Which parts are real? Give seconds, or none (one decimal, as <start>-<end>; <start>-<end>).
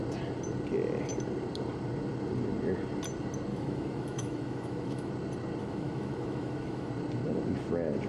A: 0.0-3.5; 5.1-5.6; 6.9-8.1